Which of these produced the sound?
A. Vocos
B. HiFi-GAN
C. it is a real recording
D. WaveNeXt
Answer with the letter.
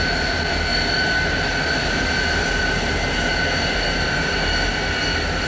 C